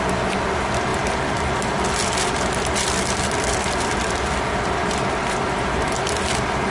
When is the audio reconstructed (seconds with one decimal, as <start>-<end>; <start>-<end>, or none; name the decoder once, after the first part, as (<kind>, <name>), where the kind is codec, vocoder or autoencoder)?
0.9-4.9 (vocoder, BigVGAN v2)